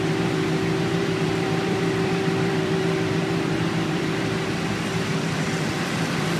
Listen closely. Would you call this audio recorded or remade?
remade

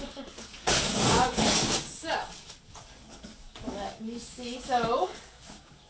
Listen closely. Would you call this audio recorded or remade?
remade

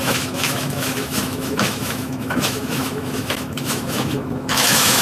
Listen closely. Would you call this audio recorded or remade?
remade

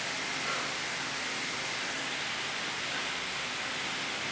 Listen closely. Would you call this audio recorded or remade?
recorded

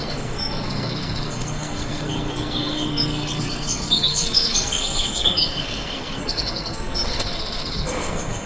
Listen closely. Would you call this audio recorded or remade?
remade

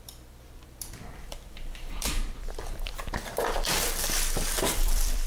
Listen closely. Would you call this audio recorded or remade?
remade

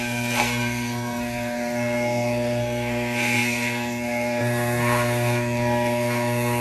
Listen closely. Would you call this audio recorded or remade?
remade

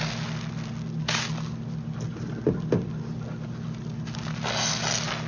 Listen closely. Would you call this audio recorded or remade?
recorded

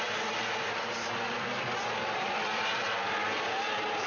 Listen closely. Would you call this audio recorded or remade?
remade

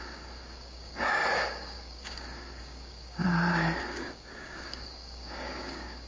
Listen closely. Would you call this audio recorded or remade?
remade